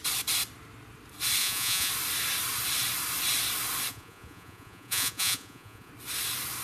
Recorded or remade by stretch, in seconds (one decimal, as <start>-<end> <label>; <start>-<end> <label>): 0.0-1.4 recorded; 1.4-1.9 remade; 1.9-3.9 recorded; 3.9-5.9 remade; 5.9-6.6 recorded